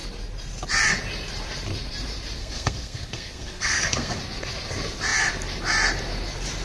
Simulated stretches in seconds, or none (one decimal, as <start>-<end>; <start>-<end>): 2.4-4.2